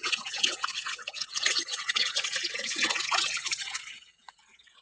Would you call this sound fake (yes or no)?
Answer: yes